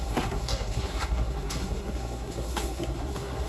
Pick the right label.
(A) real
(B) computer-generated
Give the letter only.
B